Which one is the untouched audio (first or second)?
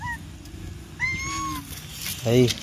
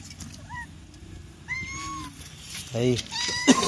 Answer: first